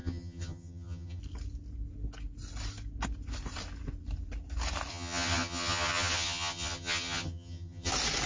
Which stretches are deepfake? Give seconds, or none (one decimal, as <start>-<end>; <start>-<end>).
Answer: 0.0-1.2; 4.9-7.9